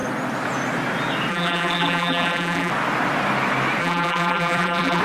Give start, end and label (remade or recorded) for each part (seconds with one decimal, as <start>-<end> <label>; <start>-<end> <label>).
0.0-1.3 recorded; 1.3-2.7 remade; 2.7-3.8 recorded; 3.8-5.0 remade